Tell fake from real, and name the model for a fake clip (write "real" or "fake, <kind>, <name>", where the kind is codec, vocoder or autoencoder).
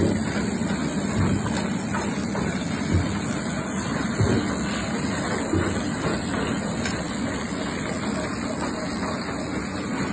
real